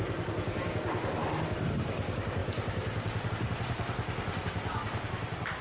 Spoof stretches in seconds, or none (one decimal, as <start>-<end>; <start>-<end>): none